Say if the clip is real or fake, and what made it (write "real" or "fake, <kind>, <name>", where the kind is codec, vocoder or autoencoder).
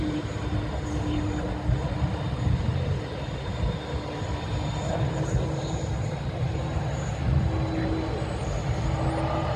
real